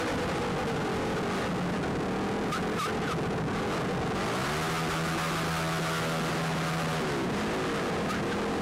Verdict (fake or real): real